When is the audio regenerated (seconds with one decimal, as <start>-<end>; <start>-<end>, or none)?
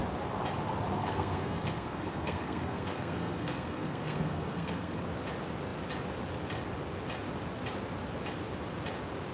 1.0-5.0